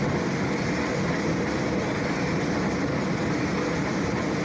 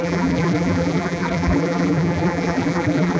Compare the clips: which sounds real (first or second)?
first